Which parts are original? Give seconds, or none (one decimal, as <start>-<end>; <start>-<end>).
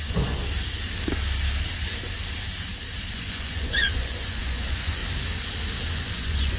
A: 0.4-3.1; 5.0-5.9